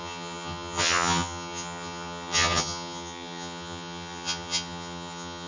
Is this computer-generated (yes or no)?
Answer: yes